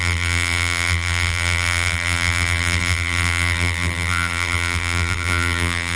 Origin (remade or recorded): remade